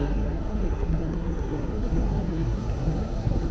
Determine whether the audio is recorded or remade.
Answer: remade